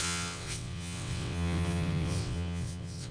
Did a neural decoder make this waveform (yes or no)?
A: yes